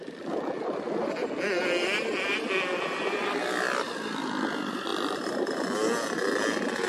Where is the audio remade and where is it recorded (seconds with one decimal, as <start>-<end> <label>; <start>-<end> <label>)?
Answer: 0.0-4.9 remade; 4.9-6.9 recorded